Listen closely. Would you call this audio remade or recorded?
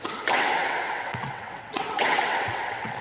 remade